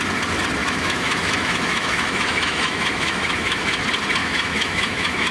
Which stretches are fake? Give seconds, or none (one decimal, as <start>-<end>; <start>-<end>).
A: 0.6-3.8; 4.2-5.3